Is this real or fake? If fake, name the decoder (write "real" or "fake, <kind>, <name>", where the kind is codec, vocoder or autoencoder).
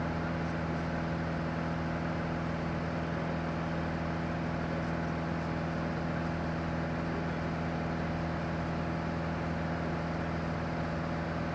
real